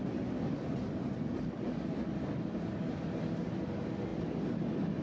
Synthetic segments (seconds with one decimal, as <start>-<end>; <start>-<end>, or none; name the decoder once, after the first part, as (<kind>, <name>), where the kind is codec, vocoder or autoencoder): none